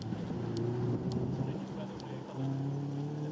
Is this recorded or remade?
recorded